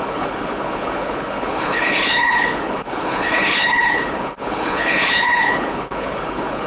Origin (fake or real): fake